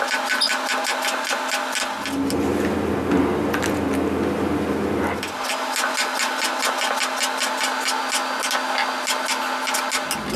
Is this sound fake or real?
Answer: real